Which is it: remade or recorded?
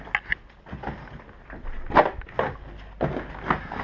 recorded